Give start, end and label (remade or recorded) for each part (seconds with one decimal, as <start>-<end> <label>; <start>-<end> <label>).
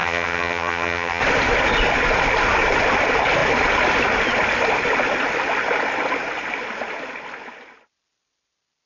0.0-1.2 remade; 1.2-8.9 recorded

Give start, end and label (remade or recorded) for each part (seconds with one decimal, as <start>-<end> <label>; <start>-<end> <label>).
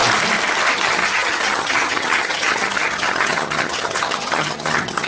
0.0-0.7 recorded; 0.7-5.1 remade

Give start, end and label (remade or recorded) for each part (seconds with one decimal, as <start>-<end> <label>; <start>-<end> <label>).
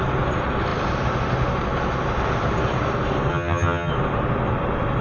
0.0-3.3 recorded; 3.3-3.9 remade; 3.9-5.0 recorded